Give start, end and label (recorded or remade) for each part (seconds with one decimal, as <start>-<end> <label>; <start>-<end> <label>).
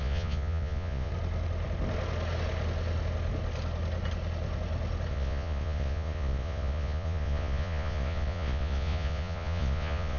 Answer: 0.0-1.1 remade; 1.1-5.1 recorded; 5.1-10.2 remade